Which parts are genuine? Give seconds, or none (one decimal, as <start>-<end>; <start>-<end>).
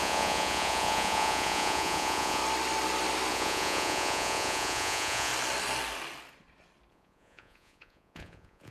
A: 2.4-3.3; 5.3-6.9